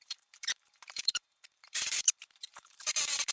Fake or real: fake